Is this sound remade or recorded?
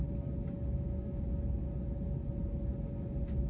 recorded